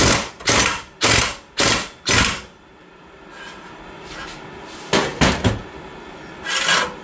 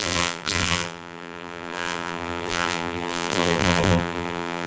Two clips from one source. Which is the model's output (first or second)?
second